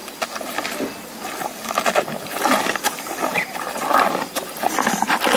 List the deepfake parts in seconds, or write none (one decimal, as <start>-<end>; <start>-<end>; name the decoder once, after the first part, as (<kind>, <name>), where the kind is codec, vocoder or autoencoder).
none